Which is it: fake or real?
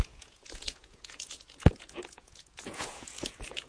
fake